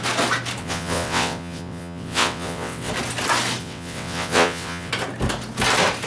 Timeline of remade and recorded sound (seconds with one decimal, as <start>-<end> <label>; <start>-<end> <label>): 0.0-0.6 recorded; 0.6-2.9 remade; 2.9-3.6 recorded; 3.6-4.9 remade; 4.9-6.1 recorded